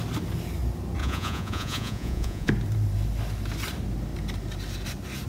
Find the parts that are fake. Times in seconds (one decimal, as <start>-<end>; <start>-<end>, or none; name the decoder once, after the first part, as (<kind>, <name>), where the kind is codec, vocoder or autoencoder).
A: 1.0-2.5 (vocoder, Vocos)